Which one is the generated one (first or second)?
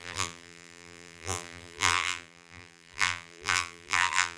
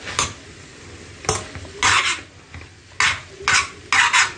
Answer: first